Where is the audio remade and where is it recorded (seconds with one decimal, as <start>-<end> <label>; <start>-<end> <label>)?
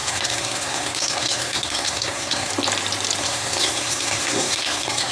0.0-2.5 remade; 2.5-3.2 recorded; 3.2-5.1 remade